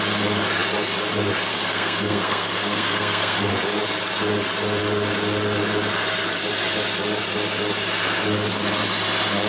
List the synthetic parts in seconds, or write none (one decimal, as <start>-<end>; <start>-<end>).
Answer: 1.5-3.5